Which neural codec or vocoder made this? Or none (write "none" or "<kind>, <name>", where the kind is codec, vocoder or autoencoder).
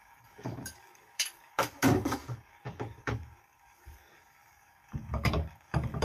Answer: codec, DAC